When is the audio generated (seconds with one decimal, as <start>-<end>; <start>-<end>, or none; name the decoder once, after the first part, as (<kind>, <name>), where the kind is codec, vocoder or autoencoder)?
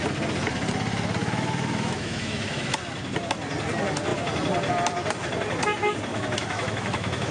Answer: 1.2-2.7 (autoencoder, DAC-VAE); 6.1-7.3